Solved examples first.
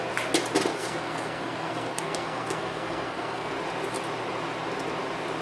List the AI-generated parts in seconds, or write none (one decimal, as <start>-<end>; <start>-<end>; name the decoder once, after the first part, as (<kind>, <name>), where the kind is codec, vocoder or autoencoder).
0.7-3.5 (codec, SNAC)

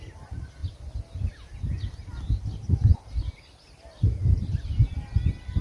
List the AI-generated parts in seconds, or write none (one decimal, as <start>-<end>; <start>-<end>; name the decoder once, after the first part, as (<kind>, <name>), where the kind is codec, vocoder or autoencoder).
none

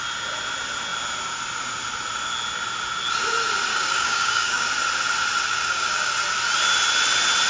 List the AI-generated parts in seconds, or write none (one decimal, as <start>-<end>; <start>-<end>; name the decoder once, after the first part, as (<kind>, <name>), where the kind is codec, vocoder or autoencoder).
3.7-4.7 (codec, DAC); 5.5-6.1

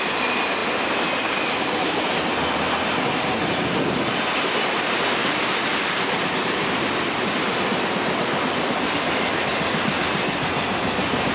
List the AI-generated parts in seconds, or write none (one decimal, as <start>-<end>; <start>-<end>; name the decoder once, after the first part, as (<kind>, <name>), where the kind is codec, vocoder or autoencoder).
none

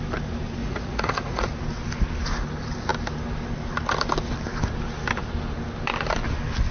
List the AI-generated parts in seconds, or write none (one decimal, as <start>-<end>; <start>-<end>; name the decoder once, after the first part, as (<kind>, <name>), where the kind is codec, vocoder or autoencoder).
0.6-1.5 (vocoder, Vocos)

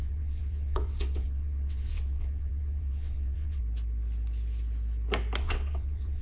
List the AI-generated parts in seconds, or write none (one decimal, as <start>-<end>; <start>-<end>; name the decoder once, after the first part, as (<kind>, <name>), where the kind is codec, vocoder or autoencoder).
0.0-3.6 (vocoder, WaveNeXt); 5.4-6.2

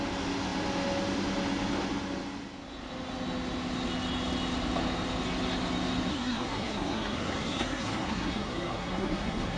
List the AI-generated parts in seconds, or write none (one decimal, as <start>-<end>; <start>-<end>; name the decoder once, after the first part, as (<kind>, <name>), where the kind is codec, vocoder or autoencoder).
6.1-9.6 (codec, SNAC)